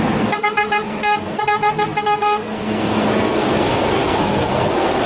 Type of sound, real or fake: fake